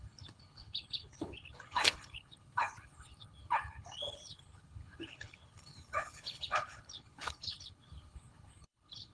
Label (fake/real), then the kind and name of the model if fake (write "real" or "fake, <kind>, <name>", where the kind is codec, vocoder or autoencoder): fake, codec, HILCodec